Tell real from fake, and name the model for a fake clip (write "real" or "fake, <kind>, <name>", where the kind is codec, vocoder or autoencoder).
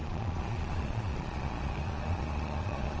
fake, vocoder, Vocos